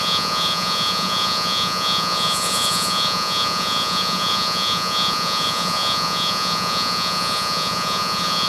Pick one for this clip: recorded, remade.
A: remade